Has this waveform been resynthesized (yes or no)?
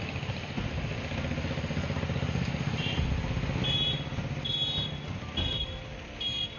no